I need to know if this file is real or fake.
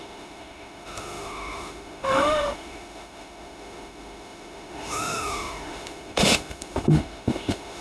fake